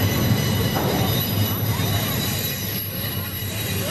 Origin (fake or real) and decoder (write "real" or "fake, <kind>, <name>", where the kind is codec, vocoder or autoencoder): fake, vocoder, BigVGAN v2